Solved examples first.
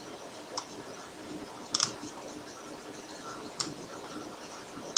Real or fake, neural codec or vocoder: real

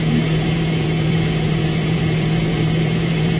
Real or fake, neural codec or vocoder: fake, vocoder, Vocos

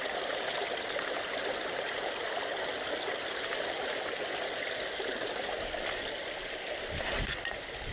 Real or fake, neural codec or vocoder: real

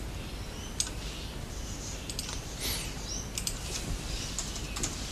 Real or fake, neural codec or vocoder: real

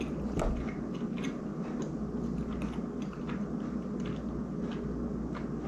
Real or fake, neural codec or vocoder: real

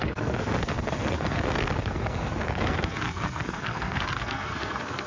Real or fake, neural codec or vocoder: fake, codec, SNAC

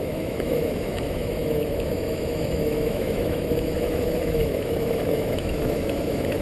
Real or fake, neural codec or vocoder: fake, autoencoder, DAC-VAE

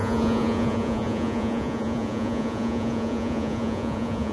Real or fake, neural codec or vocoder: fake, vocoder, Vocos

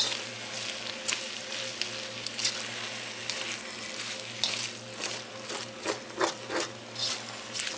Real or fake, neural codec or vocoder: real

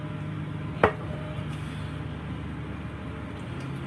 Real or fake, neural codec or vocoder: real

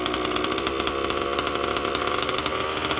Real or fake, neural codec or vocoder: real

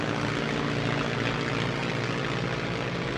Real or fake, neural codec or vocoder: real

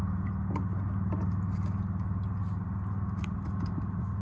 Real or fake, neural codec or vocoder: real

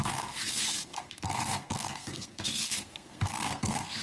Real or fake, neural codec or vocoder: fake, codec, SNAC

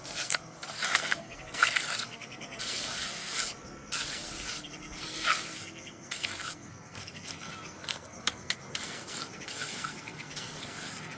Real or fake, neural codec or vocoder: fake, codec, SNAC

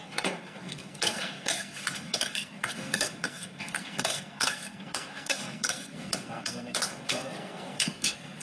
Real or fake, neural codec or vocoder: fake, codec, SNAC